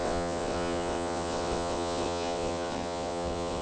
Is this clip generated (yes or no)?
yes